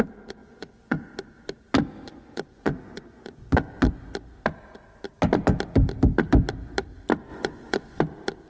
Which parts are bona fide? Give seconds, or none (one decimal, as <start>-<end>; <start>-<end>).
0.0-0.4; 1.1-2.1; 3.9-7.3; 8.0-8.5